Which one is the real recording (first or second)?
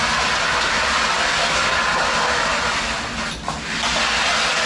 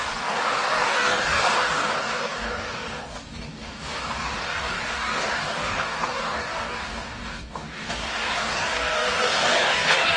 first